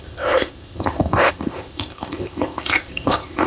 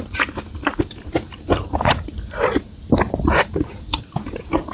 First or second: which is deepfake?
first